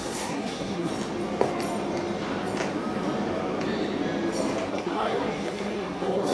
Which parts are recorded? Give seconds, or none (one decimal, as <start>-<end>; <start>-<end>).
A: 0.9-4.7